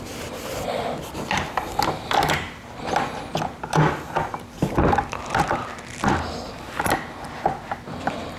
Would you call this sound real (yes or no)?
yes